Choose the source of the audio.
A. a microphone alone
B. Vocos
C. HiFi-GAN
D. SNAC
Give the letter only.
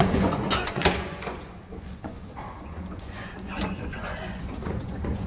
B